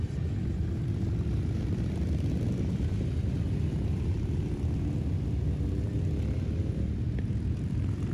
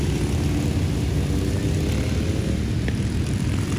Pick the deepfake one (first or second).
first